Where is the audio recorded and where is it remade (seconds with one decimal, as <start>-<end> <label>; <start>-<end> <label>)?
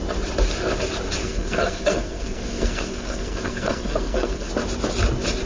0.0-1.2 recorded; 1.2-4.5 remade; 4.5-5.5 recorded